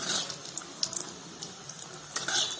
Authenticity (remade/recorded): recorded